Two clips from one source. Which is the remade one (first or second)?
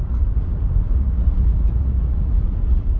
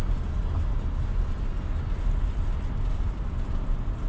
first